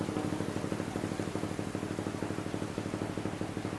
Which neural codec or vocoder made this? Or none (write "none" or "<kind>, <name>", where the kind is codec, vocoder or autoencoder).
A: none